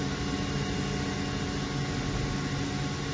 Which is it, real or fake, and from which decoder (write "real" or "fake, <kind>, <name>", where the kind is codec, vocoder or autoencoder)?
real